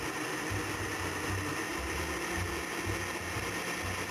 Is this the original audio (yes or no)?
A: no